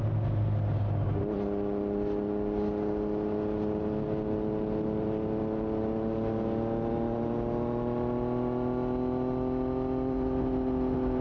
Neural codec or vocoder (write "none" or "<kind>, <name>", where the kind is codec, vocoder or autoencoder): none